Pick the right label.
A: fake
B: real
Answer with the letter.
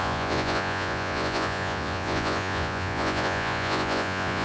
A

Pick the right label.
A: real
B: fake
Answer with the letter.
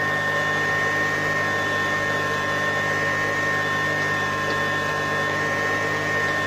A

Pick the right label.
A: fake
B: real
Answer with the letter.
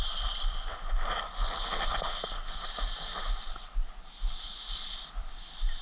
B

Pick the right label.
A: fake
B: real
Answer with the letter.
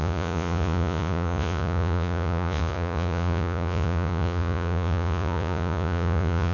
A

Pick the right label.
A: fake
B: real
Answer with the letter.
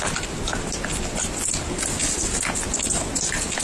B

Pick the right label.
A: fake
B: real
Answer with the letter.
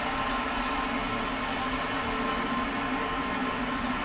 B